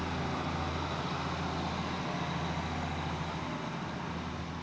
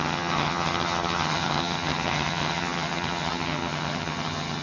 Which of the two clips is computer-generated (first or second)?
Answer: second